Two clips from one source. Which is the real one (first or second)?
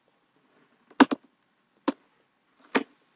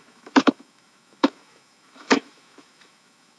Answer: first